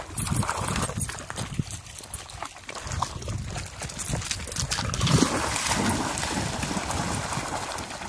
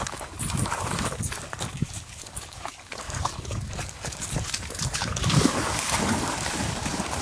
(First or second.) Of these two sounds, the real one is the first